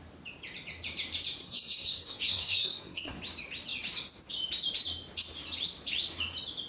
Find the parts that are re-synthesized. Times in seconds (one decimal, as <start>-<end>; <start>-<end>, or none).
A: 1.4-3.2